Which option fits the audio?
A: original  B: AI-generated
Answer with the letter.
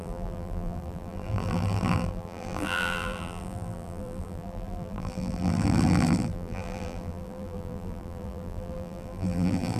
B